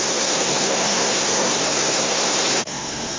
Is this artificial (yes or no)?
yes